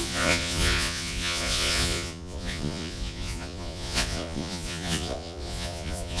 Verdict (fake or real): fake